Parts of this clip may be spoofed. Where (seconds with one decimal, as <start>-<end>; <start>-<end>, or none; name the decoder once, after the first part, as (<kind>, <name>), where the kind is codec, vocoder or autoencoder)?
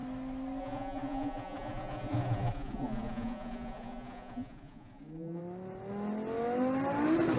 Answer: 0.6-5.4 (vocoder, Vocos)